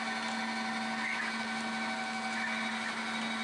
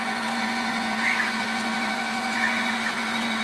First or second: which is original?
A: first